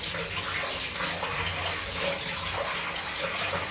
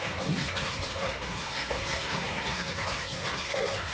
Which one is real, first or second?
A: first